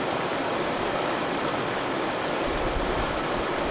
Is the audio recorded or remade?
recorded